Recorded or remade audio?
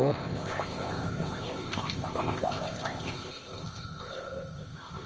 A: remade